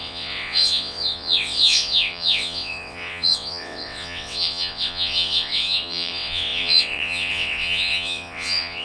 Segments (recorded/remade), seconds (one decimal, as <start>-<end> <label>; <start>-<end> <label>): 0.0-8.8 remade